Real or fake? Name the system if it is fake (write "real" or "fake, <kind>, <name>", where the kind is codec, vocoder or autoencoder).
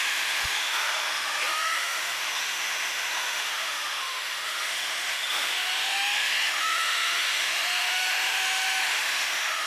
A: fake, autoencoder, DAC-VAE